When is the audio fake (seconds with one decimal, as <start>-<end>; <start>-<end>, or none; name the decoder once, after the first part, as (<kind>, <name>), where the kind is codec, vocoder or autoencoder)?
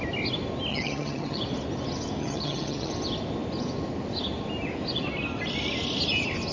0.7-1.4 (vocoder, HiFi-GAN); 2.2-2.9